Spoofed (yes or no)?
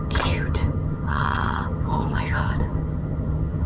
yes